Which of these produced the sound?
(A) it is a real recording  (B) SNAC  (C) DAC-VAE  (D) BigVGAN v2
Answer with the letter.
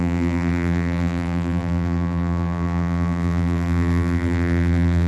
D